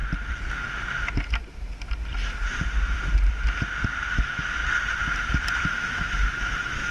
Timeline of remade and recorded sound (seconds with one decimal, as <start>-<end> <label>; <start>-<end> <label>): 0.0-4.1 recorded; 4.1-4.6 remade; 4.6-5.7 recorded; 5.7-6.9 remade

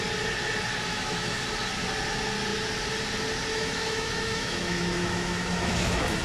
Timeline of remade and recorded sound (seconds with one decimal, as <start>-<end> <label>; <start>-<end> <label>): 0.0-0.9 recorded; 0.9-1.4 remade; 1.4-3.5 recorded; 3.5-6.2 remade

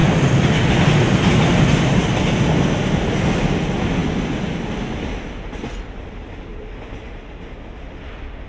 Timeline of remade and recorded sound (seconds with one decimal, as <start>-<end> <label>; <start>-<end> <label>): 0.0-8.5 recorded